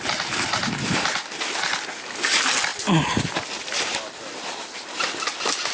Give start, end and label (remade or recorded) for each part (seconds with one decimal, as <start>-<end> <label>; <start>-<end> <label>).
0.0-5.7 recorded